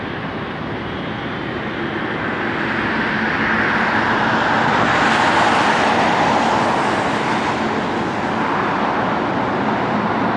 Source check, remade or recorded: recorded